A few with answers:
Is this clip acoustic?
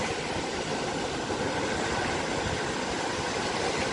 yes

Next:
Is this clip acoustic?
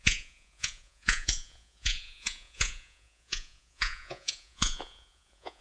no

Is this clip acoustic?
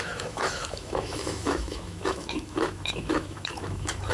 no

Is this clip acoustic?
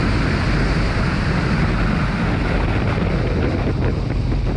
yes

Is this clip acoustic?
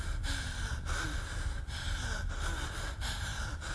yes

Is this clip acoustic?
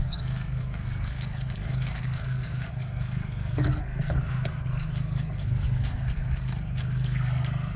no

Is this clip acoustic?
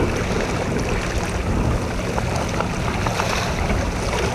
yes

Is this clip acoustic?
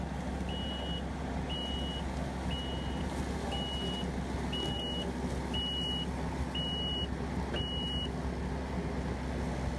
yes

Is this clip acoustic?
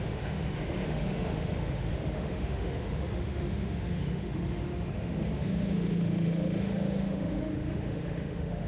no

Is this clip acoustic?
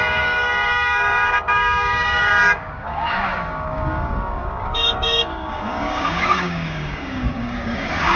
no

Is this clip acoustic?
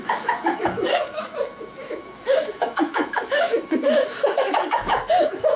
no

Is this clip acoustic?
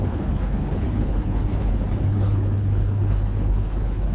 no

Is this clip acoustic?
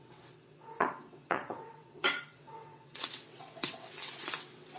no